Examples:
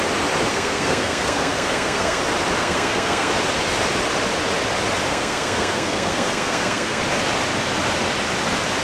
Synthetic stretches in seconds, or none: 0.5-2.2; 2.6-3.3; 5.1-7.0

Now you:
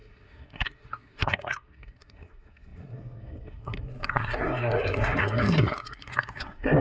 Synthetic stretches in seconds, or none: 0.0-6.8

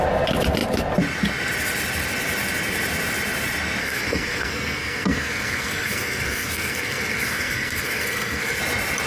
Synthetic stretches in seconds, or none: 3.8-8.6

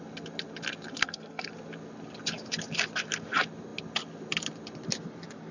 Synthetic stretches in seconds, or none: 1.0-1.5

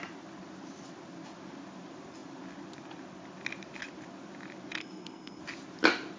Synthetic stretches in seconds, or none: 4.8-5.4

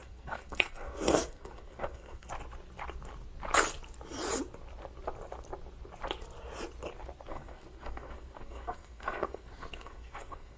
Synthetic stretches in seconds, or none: 0.0-2.3; 7.3-10.6